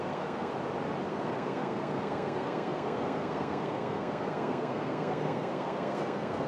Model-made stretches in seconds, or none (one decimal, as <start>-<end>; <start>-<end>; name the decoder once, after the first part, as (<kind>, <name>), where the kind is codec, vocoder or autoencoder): 0.0-0.5 (codec, SNAC); 1.1-6.5